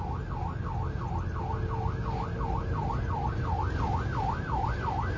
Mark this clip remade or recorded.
recorded